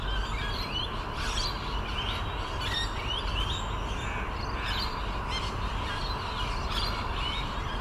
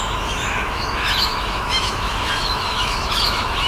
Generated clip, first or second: second